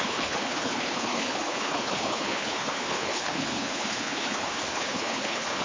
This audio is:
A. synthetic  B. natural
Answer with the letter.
A